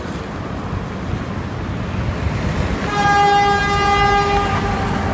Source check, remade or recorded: recorded